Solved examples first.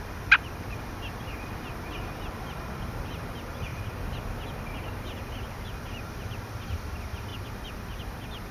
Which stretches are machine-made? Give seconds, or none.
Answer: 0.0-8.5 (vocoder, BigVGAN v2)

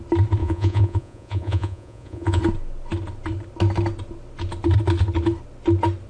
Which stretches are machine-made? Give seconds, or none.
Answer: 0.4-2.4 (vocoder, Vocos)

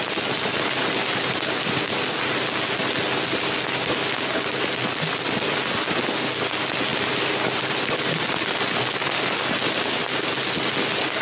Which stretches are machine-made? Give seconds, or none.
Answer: none

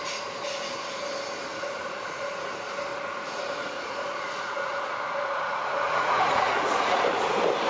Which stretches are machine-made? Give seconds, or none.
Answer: 1.5-2.5 (vocoder, Vocos); 2.9-7.0

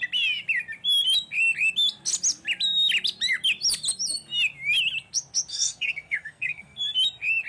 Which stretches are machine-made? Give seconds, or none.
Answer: 5.5-6.8 (codec, SNAC)

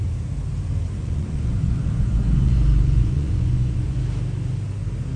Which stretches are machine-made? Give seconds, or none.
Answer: 1.0-4.0 (vocoder, Vocos)

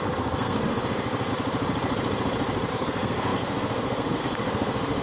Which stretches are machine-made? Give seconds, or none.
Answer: 0.0-1.3 (codec, SNAC); 2.7-5.0

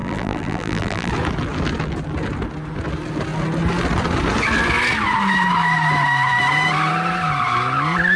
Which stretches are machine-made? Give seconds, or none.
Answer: 0.0-1.1 (vocoder, BigVGAN v2)